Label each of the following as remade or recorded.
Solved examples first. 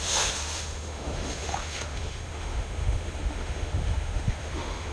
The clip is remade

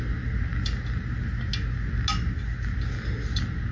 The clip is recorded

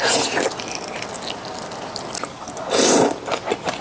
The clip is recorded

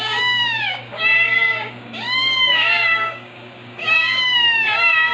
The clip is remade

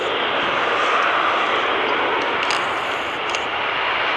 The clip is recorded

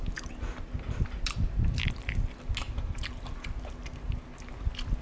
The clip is recorded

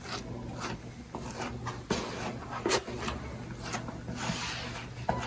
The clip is recorded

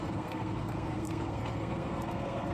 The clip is remade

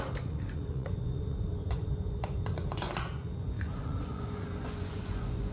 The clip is remade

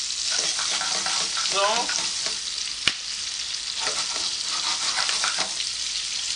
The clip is recorded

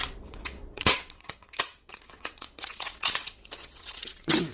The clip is remade